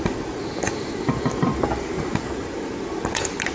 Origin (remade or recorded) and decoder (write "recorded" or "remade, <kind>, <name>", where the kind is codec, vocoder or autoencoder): recorded